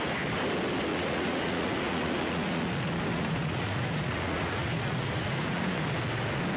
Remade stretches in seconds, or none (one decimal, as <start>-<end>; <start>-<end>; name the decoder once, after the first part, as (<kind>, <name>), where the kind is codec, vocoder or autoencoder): 0.9-2.7 (vocoder, Vocos); 3.1-5.9